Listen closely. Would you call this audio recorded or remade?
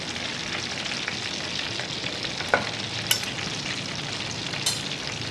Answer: recorded